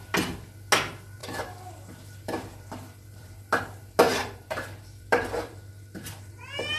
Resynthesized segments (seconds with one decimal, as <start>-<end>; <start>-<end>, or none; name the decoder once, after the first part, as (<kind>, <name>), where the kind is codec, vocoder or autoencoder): 1.2-3.6 (vocoder, BigVGAN v2); 4.2-6.3

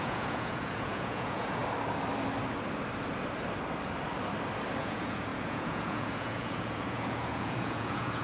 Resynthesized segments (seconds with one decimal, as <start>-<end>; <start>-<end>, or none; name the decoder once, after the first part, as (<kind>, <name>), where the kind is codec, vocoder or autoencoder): 0.0-1.6 (vocoder, Vocos); 4.8-8.2